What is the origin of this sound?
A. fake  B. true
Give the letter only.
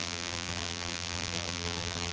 A